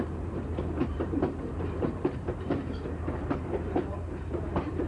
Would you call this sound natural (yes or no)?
no